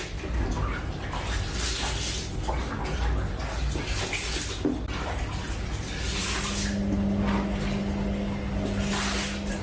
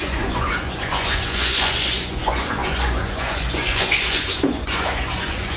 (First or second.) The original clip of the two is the first